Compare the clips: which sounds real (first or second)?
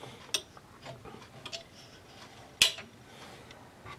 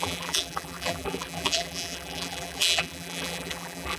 first